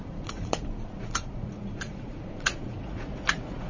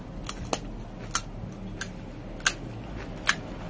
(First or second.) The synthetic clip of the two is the first